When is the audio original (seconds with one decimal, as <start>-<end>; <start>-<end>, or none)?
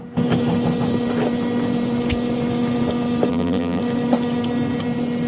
0.0-3.3; 3.8-5.3